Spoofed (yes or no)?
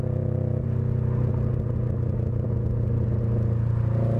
no